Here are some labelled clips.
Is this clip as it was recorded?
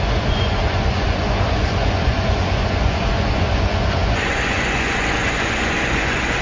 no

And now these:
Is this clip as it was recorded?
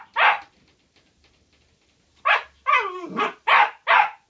yes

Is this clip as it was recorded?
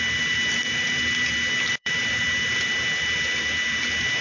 no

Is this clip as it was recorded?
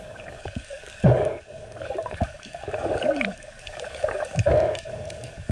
no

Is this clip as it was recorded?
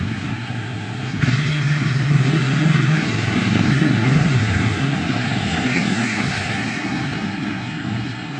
no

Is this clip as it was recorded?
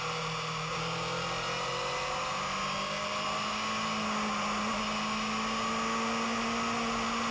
yes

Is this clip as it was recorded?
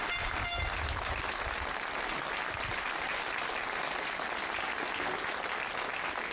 yes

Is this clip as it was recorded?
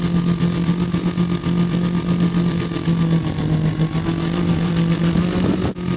yes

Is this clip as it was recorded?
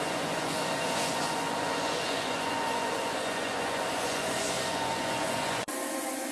no